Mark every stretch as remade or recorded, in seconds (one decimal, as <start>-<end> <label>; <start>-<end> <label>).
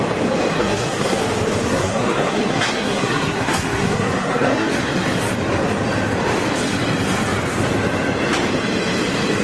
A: 0.0-0.5 recorded; 0.5-1.2 remade; 1.2-1.7 recorded; 1.7-4.7 remade; 4.7-9.4 recorded